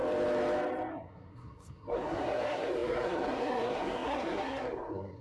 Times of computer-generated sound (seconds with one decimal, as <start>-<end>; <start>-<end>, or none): 0.9-5.2